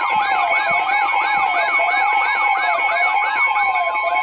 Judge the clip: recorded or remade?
recorded